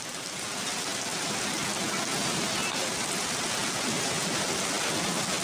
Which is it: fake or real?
real